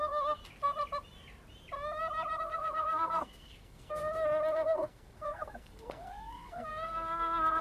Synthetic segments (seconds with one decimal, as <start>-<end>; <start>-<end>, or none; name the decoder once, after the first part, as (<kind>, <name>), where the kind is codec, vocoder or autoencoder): 0.0-0.4 (codec, SNAC); 2.4-4.0; 4.5-7.6